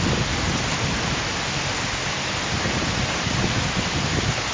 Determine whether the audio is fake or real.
real